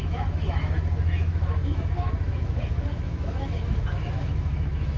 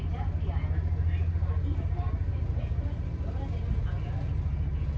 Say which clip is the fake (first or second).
first